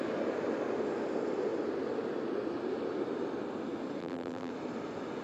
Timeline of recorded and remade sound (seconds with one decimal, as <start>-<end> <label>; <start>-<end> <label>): 0.0-4.0 recorded; 4.0-4.5 remade; 4.5-5.2 recorded